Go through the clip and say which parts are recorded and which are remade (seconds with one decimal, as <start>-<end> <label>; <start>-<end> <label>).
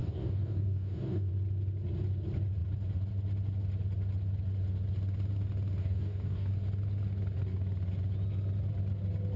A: 0.0-1.3 remade; 1.3-5.8 recorded; 5.8-6.5 remade; 6.5-9.4 recorded